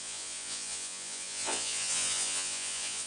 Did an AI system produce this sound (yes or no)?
yes